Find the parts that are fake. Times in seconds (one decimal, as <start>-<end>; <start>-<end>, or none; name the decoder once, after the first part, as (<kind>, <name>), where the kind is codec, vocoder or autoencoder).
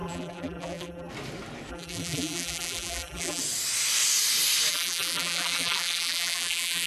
0.0-1.1 (vocoder, BigVGAN v2); 1.7-3.4; 4.7-6.9